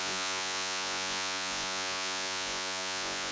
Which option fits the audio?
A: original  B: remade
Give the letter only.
B